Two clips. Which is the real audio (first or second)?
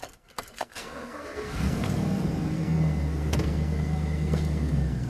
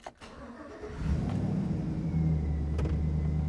second